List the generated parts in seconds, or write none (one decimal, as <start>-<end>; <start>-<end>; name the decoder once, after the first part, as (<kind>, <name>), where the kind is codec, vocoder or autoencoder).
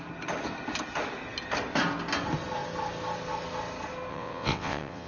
4.1-5.1 (vocoder, WaveNeXt)